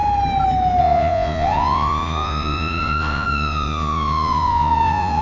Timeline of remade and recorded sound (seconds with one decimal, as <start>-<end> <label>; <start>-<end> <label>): 0.0-0.8 recorded; 0.8-5.2 remade